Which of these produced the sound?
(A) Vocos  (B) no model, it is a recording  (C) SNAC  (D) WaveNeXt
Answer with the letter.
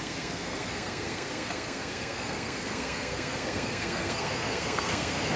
C